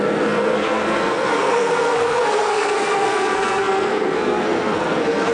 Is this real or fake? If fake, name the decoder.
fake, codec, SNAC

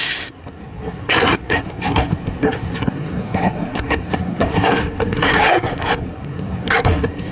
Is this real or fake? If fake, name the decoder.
fake, codec, SNAC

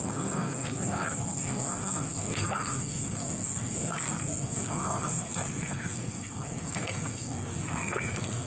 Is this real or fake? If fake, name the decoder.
fake, codec, SNAC